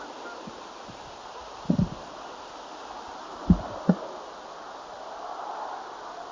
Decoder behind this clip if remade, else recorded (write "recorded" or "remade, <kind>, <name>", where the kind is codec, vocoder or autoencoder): recorded